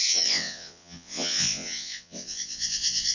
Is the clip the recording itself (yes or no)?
no